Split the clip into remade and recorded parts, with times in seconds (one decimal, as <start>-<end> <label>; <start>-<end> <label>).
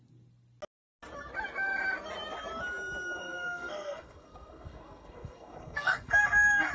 0.0-3.2 recorded; 3.2-6.7 remade